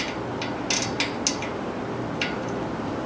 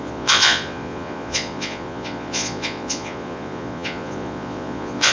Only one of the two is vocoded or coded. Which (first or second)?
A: second